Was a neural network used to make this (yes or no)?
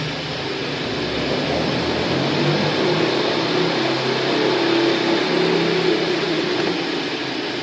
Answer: no